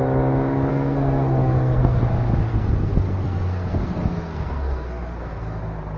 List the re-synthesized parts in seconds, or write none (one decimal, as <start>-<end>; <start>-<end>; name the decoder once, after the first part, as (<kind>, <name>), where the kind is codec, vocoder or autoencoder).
0.7-2.0 (codec, SNAC); 2.5-5.6